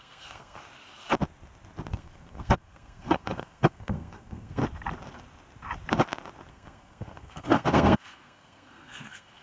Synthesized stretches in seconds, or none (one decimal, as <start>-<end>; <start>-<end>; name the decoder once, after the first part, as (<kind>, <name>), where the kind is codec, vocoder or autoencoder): 0.0-0.6 (codec, SNAC); 1.9-4.6; 6.5-9.4